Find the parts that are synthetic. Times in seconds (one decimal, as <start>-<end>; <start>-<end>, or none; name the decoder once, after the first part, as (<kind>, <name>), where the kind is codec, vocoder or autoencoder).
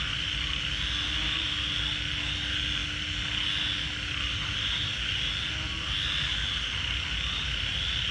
none